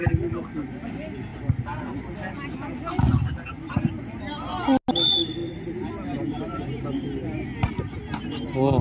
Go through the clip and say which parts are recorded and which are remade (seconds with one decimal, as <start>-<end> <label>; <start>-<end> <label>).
0.0-8.8 recorded